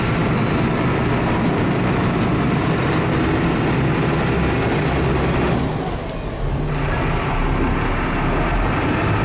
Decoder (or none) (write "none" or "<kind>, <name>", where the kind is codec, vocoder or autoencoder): none